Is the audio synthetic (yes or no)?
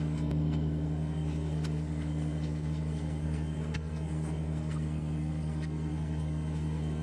yes